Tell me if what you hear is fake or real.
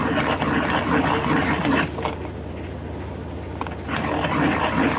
real